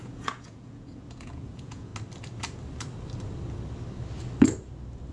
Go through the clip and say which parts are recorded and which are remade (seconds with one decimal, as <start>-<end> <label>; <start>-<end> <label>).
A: 0.0-1.9 remade; 1.9-5.1 recorded